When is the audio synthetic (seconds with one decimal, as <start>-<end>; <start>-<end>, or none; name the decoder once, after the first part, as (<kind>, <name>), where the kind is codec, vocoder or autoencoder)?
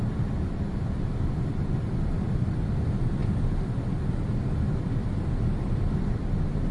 none